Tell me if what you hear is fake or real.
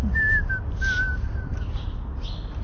real